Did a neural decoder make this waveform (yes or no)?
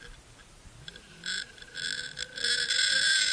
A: no